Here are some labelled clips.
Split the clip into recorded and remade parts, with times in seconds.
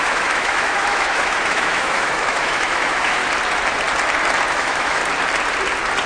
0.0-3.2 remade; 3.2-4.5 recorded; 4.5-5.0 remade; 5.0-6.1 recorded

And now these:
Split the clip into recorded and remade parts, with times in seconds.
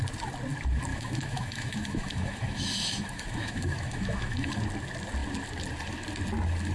0.0-0.9 recorded; 0.9-4.6 remade; 4.6-6.7 recorded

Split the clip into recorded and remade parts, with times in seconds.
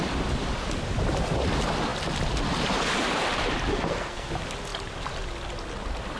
0.0-3.7 recorded; 3.7-4.3 remade; 4.3-6.2 recorded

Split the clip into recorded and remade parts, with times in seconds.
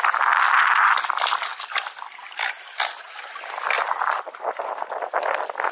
0.0-5.7 recorded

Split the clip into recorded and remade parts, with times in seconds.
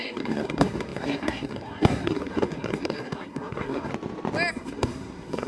0.0-3.9 remade; 3.9-4.5 recorded; 4.5-5.5 remade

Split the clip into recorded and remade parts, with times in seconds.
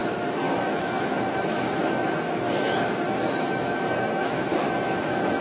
0.0-5.4 remade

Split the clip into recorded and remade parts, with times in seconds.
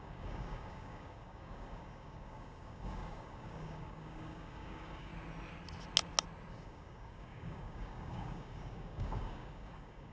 0.0-5.1 remade; 5.1-6.5 recorded; 6.5-10.1 remade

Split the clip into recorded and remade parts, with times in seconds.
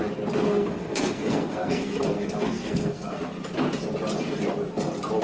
0.0-0.5 recorded; 0.5-3.2 remade; 3.2-5.2 recorded